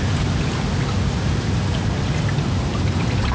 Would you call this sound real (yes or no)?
yes